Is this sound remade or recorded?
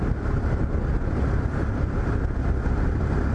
recorded